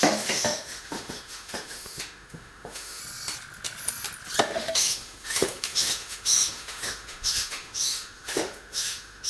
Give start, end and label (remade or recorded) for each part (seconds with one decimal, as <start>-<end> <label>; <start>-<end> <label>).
0.0-3.0 remade; 3.0-4.4 recorded; 4.4-9.3 remade